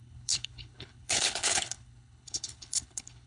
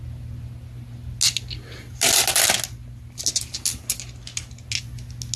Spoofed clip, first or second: first